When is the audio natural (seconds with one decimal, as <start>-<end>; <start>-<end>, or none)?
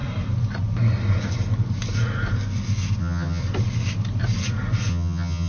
0.0-3.0; 3.4-4.9